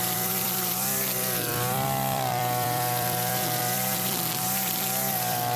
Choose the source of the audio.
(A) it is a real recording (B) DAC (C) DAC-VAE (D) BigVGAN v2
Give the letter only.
D